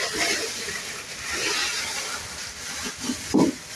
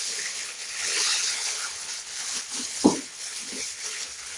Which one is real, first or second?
first